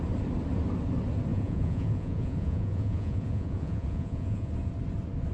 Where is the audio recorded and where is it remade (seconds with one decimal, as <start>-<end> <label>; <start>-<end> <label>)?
0.0-1.3 recorded; 1.3-4.5 remade; 4.5-5.3 recorded